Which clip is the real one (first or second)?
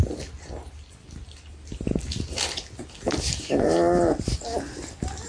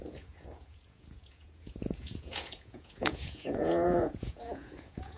first